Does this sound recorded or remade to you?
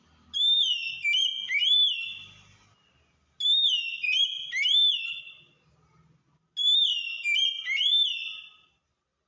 recorded